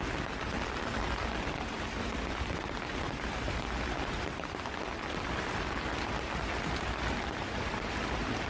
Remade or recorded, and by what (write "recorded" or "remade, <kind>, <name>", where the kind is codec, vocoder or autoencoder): recorded